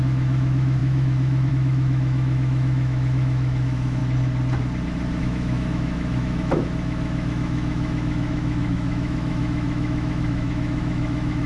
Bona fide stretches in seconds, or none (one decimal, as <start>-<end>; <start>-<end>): 4.0-5.2